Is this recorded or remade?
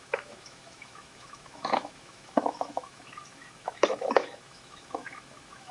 remade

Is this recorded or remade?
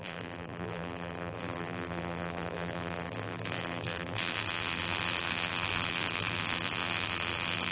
remade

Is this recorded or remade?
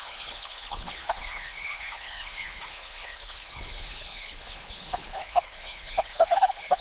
remade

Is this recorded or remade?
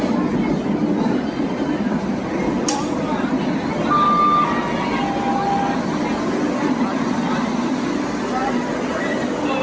recorded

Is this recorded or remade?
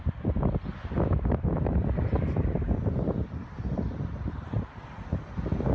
recorded